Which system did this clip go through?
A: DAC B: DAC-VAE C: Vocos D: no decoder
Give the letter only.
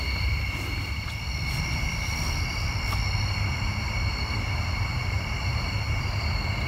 D